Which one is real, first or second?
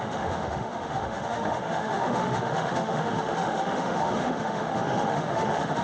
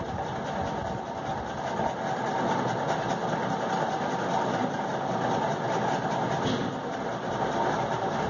second